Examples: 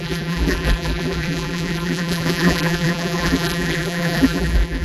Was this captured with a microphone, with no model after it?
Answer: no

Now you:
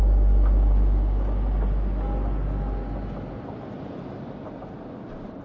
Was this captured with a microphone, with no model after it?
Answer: yes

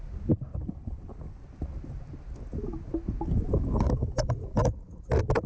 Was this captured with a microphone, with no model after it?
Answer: yes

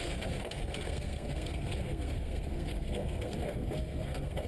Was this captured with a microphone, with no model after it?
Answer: no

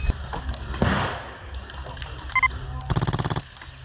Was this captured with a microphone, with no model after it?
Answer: yes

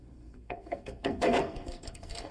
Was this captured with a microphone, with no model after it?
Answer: no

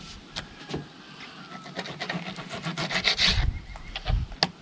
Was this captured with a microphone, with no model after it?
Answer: yes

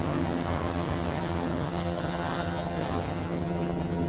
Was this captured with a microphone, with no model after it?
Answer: no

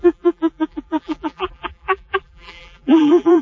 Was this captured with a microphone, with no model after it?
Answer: no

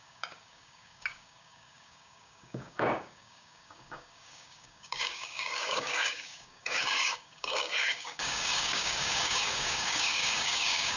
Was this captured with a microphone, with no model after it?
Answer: no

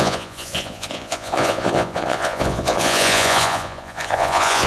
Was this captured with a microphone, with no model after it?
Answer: no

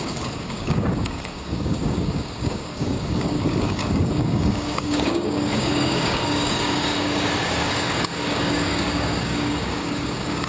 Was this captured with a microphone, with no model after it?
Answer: no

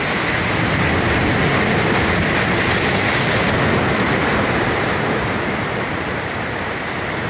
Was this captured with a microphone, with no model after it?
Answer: yes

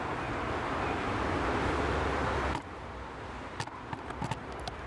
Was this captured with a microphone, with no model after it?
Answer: yes